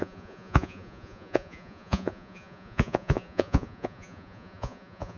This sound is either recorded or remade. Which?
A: remade